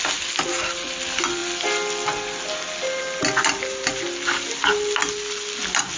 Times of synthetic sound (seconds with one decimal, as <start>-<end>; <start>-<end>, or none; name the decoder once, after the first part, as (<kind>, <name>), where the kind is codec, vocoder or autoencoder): none